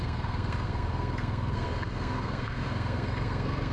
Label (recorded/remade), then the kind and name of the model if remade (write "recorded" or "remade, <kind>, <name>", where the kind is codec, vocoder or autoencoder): remade, codec, SNAC